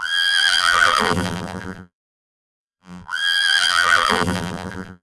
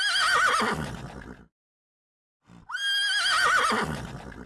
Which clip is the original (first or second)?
second